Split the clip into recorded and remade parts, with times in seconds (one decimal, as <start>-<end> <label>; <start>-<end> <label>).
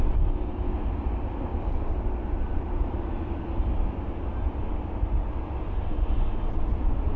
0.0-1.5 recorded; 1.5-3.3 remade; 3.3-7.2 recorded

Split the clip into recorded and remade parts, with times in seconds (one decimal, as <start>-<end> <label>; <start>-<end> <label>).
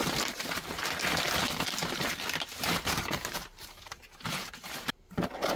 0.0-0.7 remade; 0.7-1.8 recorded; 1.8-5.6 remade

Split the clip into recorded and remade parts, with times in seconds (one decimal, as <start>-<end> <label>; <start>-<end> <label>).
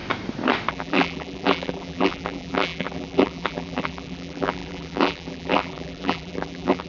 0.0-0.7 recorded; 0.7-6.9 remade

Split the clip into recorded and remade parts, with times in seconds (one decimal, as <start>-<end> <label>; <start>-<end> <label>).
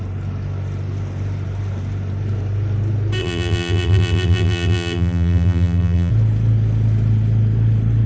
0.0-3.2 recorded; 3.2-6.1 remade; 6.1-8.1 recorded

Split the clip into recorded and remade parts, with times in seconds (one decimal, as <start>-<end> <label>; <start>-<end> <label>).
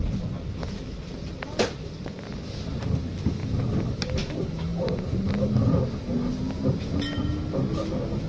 0.0-8.3 recorded